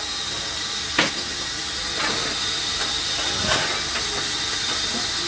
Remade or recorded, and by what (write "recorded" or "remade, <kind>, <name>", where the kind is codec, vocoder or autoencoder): recorded